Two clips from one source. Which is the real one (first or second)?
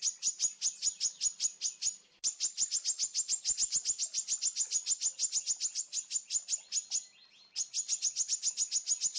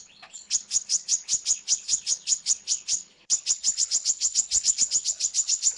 first